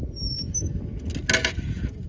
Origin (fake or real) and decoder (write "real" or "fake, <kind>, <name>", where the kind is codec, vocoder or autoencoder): real